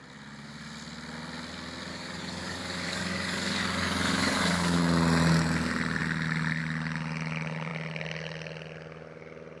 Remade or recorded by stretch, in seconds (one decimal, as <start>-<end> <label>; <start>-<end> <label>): 0.0-1.9 recorded; 1.9-4.8 remade; 4.8-9.6 recorded